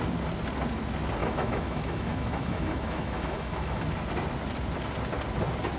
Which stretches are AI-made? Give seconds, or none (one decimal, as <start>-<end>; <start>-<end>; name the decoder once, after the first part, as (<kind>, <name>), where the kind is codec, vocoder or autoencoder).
1.2-3.8 (autoencoder, DAC-VAE)